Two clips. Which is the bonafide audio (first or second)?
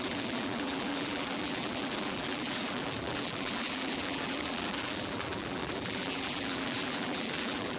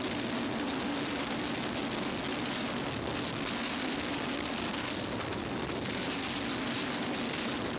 second